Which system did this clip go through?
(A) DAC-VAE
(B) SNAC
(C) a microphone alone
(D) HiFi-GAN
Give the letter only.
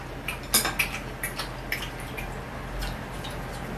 C